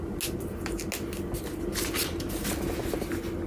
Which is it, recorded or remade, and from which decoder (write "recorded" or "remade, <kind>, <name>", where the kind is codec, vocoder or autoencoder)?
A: recorded